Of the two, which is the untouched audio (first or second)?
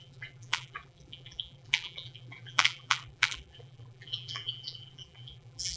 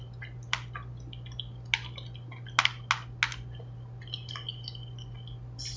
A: second